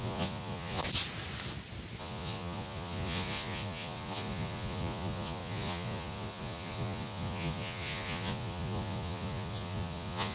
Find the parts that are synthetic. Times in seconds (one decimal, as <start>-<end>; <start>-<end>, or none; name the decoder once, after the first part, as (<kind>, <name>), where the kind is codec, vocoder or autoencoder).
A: 0.0-0.8 (vocoder, Vocos); 2.0-10.3